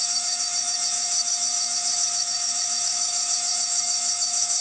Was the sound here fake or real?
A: fake